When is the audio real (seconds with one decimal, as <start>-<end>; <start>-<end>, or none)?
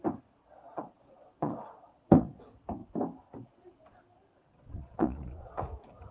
0.0-0.4; 2.4-4.4; 5.6-6.1